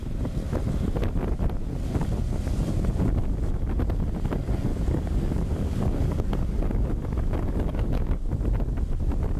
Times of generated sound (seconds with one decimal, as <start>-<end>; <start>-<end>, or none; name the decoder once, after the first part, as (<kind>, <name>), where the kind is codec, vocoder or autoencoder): 4.7-8.3 (codec, DAC)